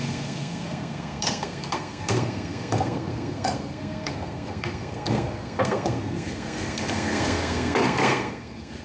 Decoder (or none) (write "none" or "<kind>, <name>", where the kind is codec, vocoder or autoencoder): codec, SNAC